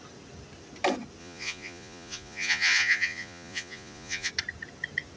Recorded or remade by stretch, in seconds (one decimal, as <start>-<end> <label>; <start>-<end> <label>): 0.0-1.2 recorded; 1.2-4.3 remade; 4.3-5.2 recorded